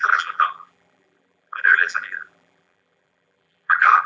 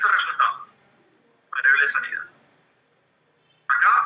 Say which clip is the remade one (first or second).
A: first